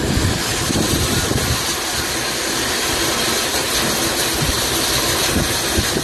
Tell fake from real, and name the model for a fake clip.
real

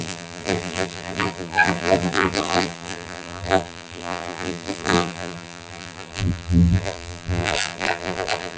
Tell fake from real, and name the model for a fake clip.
fake, vocoder, BigVGAN v2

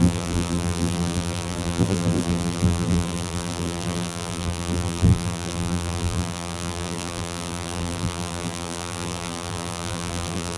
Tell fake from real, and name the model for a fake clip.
fake, vocoder, BigVGAN v2